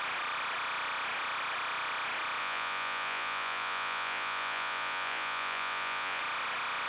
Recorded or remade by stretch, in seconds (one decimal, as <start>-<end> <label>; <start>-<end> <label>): 0.0-2.4 recorded; 2.4-6.2 remade; 6.2-6.9 recorded